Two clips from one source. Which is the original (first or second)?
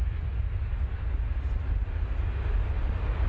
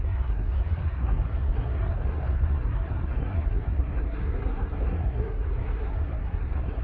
first